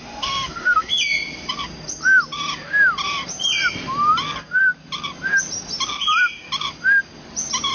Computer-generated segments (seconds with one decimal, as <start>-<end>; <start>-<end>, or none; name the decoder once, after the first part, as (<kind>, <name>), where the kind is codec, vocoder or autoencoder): 0.0-0.9 (autoencoder, DAC-VAE)